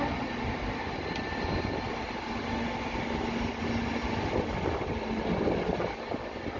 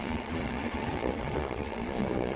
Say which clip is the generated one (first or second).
second